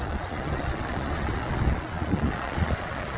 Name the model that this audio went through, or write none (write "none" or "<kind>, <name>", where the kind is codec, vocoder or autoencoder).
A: vocoder, Vocos